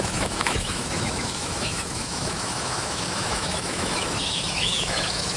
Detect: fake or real fake